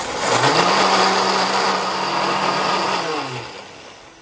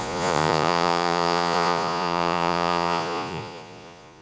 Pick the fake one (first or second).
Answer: second